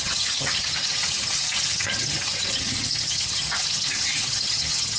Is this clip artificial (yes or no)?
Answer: yes